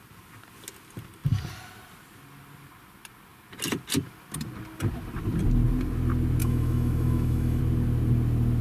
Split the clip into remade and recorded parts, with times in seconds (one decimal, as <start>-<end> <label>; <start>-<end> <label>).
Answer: 0.0-6.4 recorded; 6.4-7.6 remade; 7.6-8.6 recorded